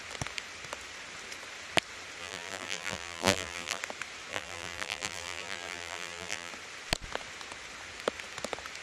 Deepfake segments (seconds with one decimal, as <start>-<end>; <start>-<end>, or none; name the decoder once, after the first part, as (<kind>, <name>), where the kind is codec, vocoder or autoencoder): 2.2-3.8 (vocoder, BigVGAN v2); 4.3-6.5